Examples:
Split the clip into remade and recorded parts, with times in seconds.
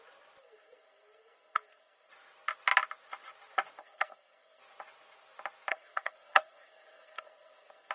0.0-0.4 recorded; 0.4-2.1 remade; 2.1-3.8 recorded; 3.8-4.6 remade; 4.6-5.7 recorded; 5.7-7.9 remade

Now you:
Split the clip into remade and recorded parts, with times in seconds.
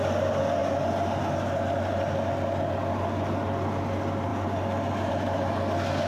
0.0-6.1 recorded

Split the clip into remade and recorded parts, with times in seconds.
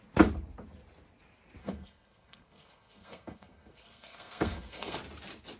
0.0-1.6 recorded; 1.6-5.0 remade; 5.0-5.6 recorded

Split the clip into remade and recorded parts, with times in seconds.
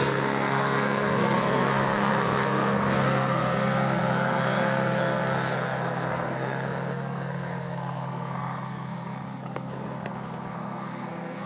0.0-11.5 remade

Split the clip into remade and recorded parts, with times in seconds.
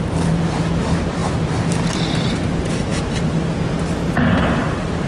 0.0-5.1 recorded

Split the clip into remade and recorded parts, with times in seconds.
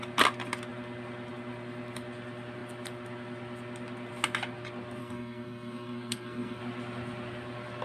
0.0-5.0 recorded; 5.0-6.6 remade; 6.6-7.8 recorded